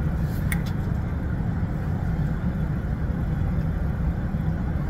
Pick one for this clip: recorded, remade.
recorded